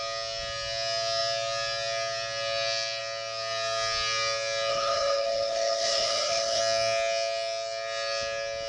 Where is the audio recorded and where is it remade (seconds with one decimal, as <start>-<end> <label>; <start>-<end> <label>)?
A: 0.0-4.7 recorded; 4.7-6.6 remade; 6.6-8.7 recorded